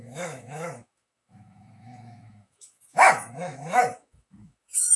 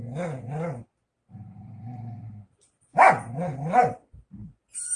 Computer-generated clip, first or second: first